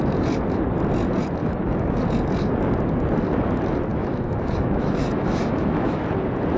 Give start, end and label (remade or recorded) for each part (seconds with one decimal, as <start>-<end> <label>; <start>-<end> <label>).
0.0-1.4 recorded; 1.4-1.9 remade; 1.9-3.9 recorded; 3.9-6.0 remade; 6.0-6.6 recorded